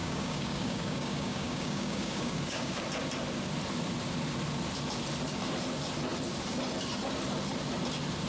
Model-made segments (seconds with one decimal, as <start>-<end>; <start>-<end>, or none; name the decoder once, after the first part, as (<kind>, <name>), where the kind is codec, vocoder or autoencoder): 0.0-2.8 (codec, DAC)